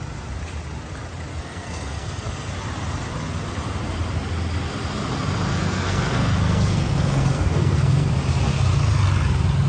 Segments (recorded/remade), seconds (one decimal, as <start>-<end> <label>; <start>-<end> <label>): 0.0-1.3 recorded; 1.3-2.5 remade; 2.5-5.5 recorded; 5.5-8.1 remade; 8.1-9.7 recorded